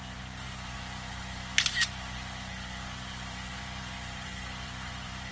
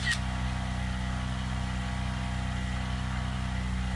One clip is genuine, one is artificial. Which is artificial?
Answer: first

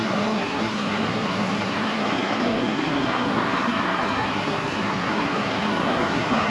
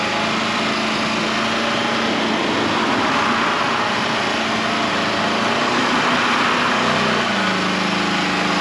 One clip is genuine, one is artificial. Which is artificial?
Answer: first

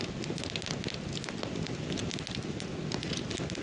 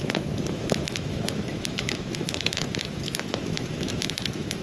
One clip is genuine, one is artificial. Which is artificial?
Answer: second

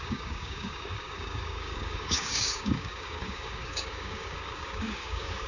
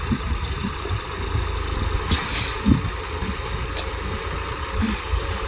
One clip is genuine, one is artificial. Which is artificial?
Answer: first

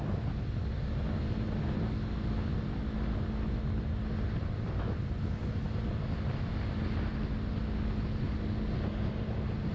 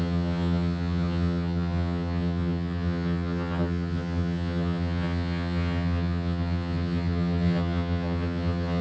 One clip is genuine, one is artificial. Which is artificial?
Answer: second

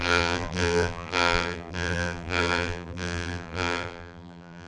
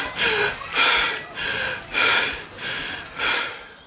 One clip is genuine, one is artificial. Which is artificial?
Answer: first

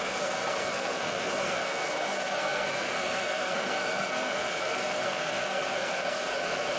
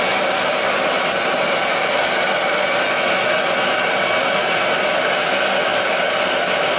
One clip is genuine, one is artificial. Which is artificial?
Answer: first